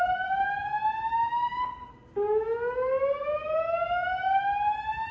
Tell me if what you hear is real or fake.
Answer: real